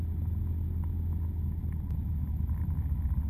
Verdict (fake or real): real